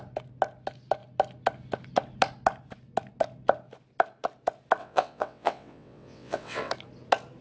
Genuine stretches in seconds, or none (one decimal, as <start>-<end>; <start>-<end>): 0.0-4.8; 6.7-7.4